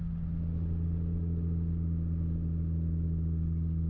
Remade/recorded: recorded